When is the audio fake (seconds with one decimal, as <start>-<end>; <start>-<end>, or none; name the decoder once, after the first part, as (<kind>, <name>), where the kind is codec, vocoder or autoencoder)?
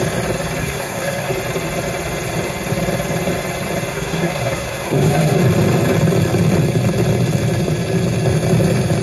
0.6-1.3 (codec, SNAC); 3.9-5.4